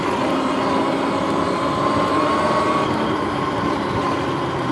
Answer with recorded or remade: recorded